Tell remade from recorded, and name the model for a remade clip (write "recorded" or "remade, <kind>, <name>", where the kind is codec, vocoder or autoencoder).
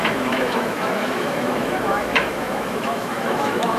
remade, autoencoder, DAC-VAE